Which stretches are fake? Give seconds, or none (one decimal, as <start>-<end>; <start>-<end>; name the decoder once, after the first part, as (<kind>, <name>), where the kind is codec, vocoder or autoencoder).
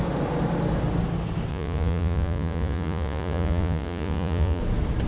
1.5-4.6 (vocoder, Vocos)